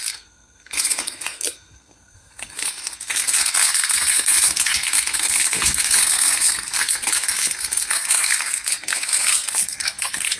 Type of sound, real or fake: fake